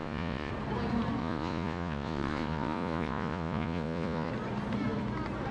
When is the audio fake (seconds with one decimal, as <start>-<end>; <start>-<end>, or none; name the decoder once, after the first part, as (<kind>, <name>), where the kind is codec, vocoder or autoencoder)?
0.0-0.5 (vocoder, Vocos); 1.2-4.3